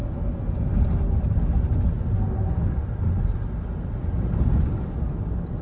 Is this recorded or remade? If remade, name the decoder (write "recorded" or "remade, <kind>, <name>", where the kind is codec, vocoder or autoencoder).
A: recorded